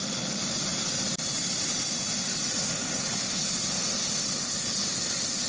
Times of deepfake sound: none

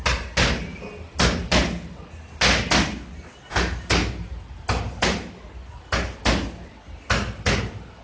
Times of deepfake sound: none

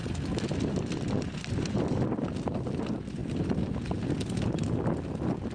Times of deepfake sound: none